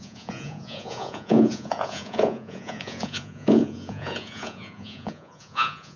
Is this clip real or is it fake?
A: fake